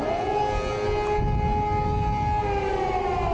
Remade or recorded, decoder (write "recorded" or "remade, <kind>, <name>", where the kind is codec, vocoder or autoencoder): recorded